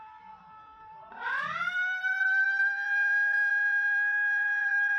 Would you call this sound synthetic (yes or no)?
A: yes